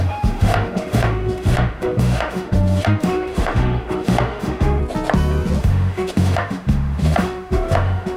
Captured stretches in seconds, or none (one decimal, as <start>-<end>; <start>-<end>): 4.8-5.6